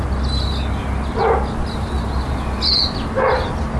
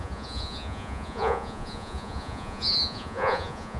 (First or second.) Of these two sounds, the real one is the first